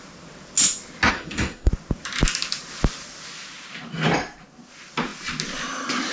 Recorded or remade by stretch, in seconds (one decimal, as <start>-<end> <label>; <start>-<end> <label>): 0.0-1.1 recorded; 1.1-1.7 remade; 1.7-6.1 recorded